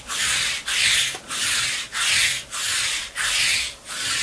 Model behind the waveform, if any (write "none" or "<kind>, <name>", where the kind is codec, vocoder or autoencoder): none